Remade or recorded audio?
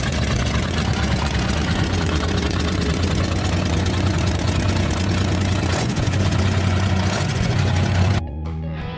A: remade